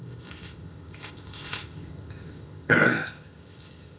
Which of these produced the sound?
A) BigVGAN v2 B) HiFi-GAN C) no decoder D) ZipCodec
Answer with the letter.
D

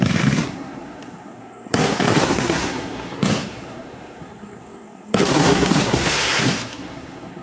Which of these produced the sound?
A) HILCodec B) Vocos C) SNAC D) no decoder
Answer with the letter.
C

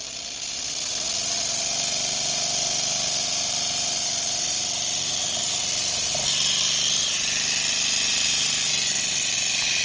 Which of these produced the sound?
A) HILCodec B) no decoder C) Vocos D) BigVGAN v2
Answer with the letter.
B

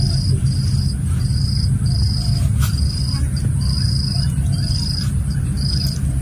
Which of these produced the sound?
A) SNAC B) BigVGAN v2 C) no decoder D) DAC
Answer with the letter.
C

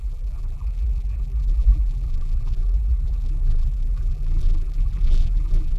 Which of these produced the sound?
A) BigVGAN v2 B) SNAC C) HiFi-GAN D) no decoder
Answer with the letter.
A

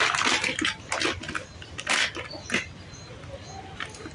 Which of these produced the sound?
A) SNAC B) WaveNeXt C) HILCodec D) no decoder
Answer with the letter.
D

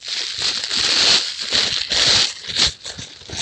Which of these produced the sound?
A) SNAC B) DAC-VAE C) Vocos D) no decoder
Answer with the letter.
D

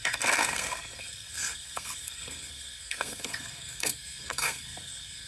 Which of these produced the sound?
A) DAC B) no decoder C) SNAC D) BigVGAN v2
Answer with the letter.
C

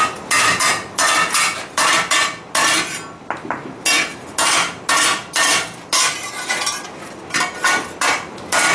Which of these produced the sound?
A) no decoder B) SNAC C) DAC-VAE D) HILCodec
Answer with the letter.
A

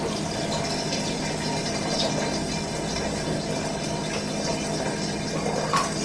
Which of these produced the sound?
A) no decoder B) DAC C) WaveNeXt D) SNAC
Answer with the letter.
A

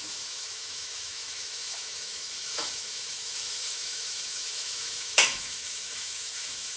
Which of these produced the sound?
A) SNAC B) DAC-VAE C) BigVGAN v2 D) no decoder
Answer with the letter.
B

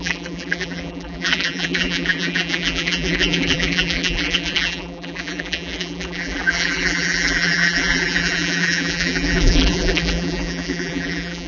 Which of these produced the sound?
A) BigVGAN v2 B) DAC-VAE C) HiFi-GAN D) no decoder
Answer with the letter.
A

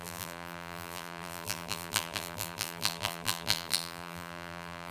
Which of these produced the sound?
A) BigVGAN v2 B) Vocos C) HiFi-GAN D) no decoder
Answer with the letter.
A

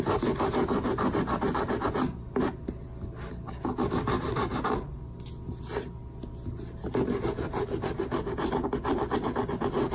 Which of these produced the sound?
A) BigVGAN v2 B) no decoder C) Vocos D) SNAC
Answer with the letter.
B